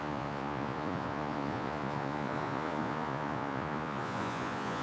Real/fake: fake